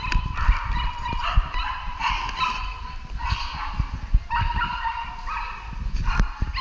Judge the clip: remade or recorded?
recorded